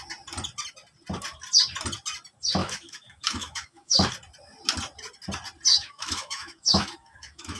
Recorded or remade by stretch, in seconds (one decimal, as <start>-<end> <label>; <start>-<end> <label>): 0.0-2.6 recorded; 2.6-4.1 remade; 4.1-5.7 recorded; 5.7-7.6 remade